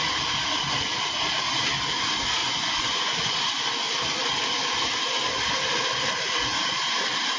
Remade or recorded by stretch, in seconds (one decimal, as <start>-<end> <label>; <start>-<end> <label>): 0.0-2.4 recorded; 2.4-3.3 remade; 3.3-7.4 recorded